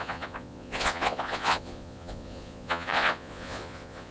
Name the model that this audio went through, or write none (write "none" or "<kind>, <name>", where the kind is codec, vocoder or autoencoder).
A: vocoder, Vocos